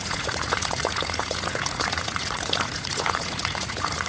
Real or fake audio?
fake